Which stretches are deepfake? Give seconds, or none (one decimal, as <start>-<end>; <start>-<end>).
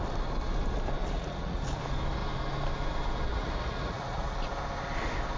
1.0-1.8; 3.3-4.5